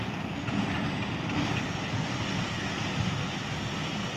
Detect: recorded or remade recorded